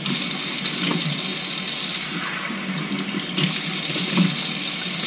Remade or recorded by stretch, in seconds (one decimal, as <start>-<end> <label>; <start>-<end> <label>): 0.0-5.1 recorded